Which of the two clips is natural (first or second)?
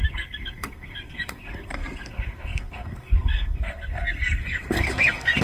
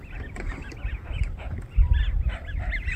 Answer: second